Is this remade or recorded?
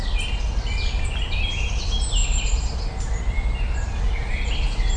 recorded